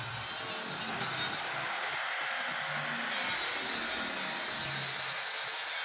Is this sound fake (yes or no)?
no